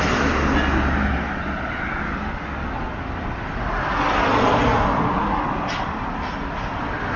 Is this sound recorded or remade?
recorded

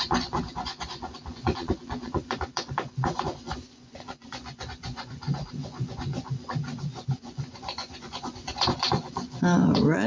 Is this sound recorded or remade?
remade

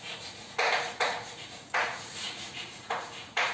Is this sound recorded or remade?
remade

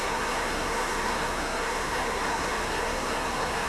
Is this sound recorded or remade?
remade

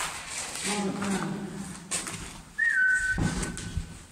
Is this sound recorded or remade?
recorded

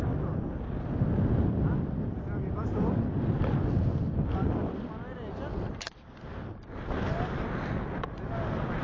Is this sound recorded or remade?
recorded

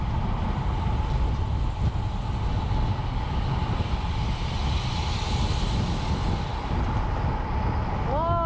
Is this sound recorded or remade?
recorded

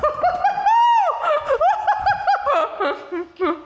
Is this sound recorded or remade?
recorded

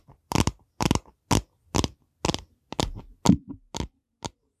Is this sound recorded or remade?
recorded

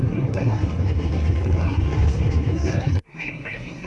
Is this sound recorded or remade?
remade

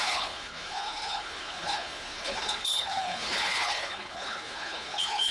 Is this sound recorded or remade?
remade